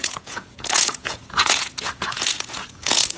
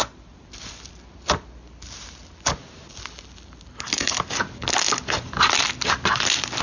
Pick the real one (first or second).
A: second